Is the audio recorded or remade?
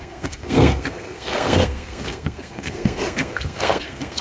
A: remade